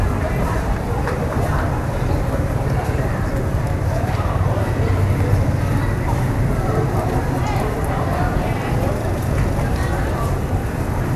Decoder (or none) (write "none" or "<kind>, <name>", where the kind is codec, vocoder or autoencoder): vocoder, BigVGAN v2